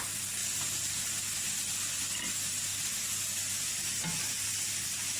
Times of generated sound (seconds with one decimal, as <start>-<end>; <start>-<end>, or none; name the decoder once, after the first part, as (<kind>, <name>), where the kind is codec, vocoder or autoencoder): none